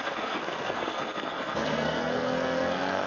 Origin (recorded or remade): remade